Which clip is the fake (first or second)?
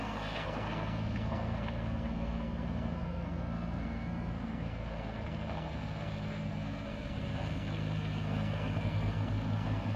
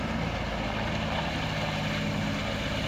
first